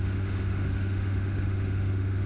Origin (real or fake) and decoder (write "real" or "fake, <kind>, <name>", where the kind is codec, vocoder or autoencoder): fake, autoencoder, DAC-VAE